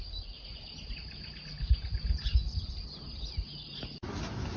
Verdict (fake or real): real